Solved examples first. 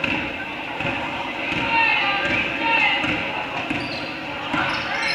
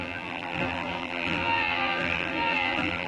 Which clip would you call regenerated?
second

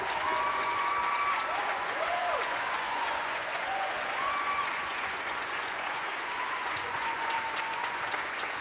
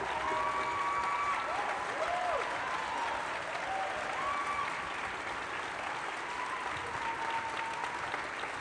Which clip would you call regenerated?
first